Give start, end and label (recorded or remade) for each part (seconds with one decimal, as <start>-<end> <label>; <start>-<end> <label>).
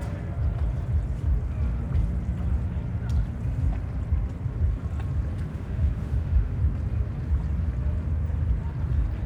0.0-5.5 recorded; 5.5-6.6 remade; 6.6-9.3 recorded